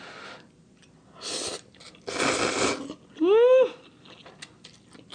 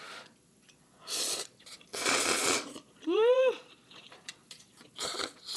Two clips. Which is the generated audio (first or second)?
second